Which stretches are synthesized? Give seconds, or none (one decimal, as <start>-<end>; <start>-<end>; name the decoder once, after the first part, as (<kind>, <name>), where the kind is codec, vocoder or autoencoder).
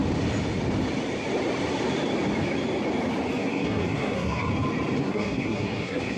3.4-4.5 (codec, SNAC); 5.0-6.2